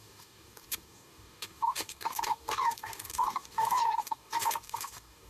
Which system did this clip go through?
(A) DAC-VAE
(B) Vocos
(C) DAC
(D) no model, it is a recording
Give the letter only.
C